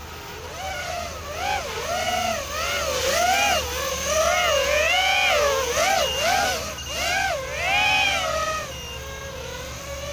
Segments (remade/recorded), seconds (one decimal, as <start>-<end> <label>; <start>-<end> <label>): 0.0-4.3 recorded; 4.3-5.9 remade; 5.9-10.1 recorded